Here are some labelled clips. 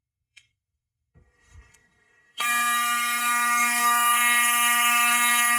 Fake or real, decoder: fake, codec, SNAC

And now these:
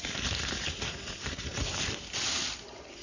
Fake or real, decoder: real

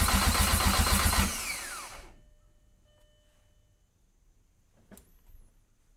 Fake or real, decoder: real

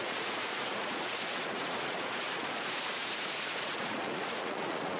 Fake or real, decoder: fake, vocoder, Vocos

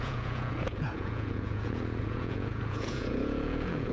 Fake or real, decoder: fake, vocoder, Vocos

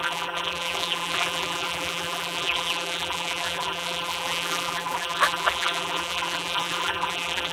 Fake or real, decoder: fake, vocoder, BigVGAN v2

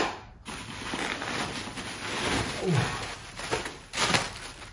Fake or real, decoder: real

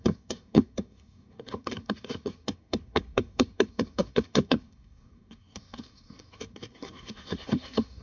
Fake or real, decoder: fake, codec, SNAC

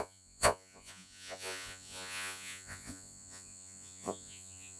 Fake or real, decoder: fake, vocoder, Vocos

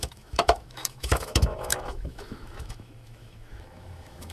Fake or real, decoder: fake, autoencoder, DAC-VAE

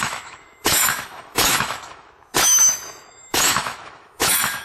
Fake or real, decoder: fake, autoencoder, DAC-VAE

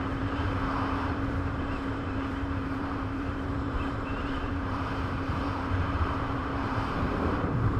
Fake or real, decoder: fake, vocoder, BigVGAN v2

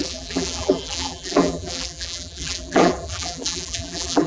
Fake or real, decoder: fake, vocoder, BigVGAN v2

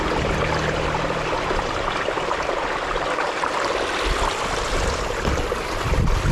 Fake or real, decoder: real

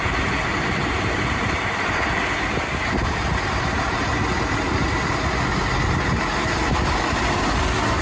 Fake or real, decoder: real